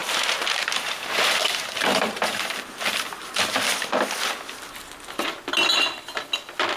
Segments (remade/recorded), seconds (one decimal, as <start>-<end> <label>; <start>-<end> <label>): 0.0-3.7 remade; 3.7-6.8 recorded